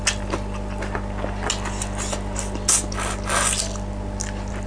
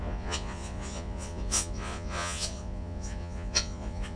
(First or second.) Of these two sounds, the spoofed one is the second